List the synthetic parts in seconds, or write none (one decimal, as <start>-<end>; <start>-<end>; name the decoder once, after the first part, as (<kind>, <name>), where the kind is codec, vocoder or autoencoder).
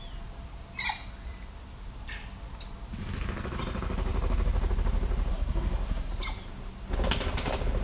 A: 5.3-6.1 (codec, SNAC)